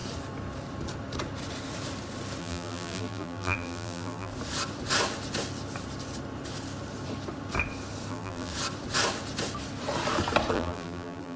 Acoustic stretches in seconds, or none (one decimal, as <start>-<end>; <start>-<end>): 0.0-2.4; 4.3-8.1; 8.5-10.5